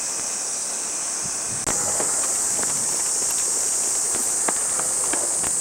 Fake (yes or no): no